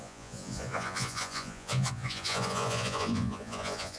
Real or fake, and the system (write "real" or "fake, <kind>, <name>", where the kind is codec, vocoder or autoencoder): fake, vocoder, Vocos